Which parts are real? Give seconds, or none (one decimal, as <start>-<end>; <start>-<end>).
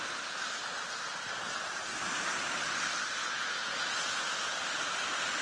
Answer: 0.0-3.2; 4.6-5.4